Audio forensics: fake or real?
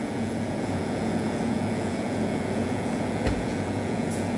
fake